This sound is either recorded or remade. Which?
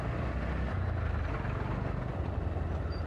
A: recorded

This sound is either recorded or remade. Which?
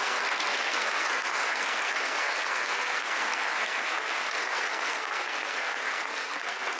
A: remade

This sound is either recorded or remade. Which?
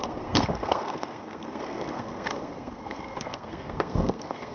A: remade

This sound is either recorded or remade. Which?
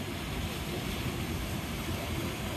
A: recorded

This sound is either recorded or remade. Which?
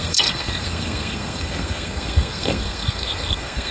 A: remade